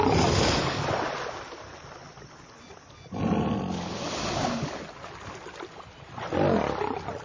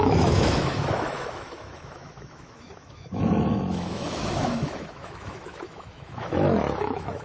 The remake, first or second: second